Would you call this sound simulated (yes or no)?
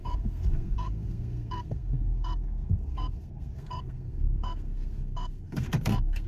yes